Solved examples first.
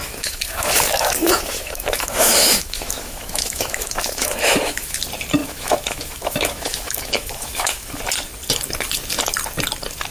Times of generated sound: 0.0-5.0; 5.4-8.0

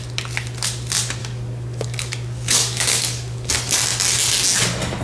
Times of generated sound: 1.2-3.5

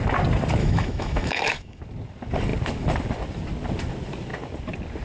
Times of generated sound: 0.6-1.8

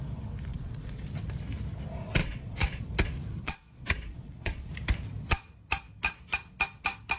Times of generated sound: 0.5-1.1; 2.2-2.8; 3.4-4.7

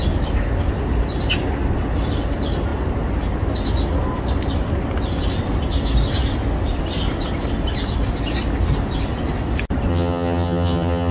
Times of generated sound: 9.9-11.1

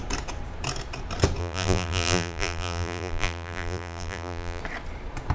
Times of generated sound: 1.4-4.6

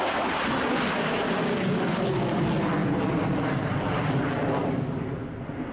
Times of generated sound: none

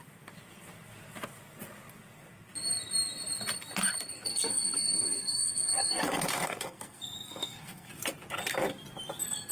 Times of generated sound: 4.3-7.9